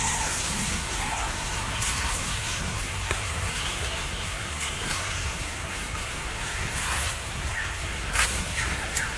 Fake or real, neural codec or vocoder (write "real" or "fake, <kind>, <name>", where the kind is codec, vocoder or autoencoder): fake, codec, SNAC